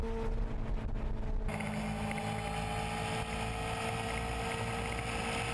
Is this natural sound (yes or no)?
yes